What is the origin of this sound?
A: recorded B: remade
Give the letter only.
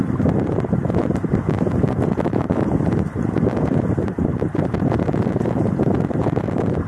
B